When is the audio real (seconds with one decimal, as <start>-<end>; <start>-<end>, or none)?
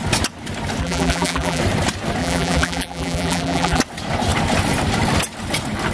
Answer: 0.0-0.8; 1.6-2.2; 3.8-5.9